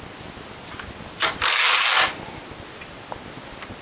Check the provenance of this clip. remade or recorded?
recorded